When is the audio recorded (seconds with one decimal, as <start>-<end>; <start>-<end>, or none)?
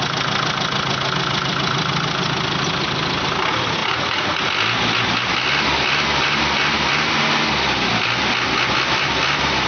0.0-3.8; 4.4-9.7